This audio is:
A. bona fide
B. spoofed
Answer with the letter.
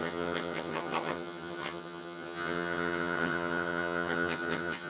B